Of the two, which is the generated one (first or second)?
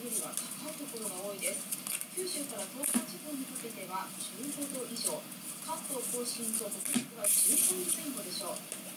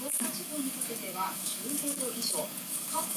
second